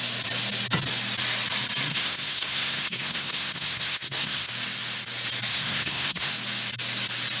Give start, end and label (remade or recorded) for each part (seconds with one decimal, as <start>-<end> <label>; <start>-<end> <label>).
0.0-1.9 recorded; 1.9-4.5 remade; 4.5-5.5 recorded; 5.5-6.3 remade; 6.3-7.4 recorded